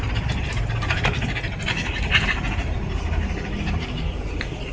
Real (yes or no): yes